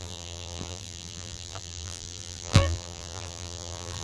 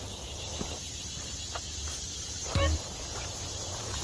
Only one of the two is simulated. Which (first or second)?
first